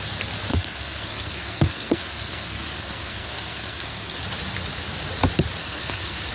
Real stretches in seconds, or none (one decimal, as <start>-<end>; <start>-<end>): 0.0-0.5; 4.2-5.6